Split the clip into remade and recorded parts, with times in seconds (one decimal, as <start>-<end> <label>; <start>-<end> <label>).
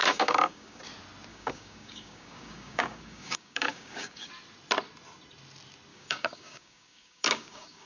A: 0.0-0.8 remade; 0.8-1.3 recorded; 1.3-4.3 remade; 4.3-5.9 recorded; 5.9-7.9 remade